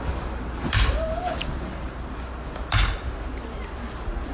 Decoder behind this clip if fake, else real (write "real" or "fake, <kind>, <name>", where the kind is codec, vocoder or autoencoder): fake, vocoder, BigVGAN v2